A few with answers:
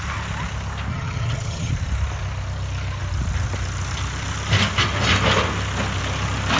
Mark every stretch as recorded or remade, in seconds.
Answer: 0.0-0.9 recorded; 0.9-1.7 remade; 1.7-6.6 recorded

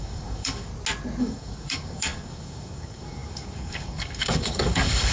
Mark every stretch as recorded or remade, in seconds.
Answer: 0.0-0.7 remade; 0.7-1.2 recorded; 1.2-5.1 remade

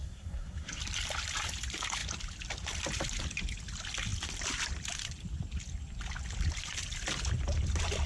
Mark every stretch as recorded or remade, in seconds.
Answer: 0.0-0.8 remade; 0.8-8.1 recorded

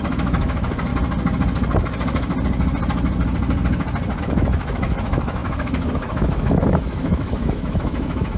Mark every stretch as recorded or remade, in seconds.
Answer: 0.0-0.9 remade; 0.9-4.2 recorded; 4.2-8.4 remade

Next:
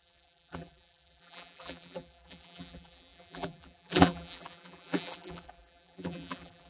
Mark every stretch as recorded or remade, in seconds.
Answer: 0.0-6.7 remade